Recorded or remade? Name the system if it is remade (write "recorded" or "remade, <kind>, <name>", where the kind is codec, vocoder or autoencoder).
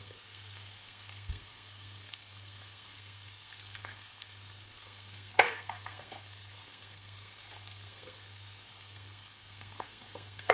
remade, codec, SNAC